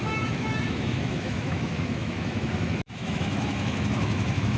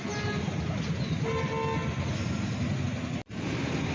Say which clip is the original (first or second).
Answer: second